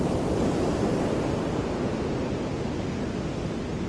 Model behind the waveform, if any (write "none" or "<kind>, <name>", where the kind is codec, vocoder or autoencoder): none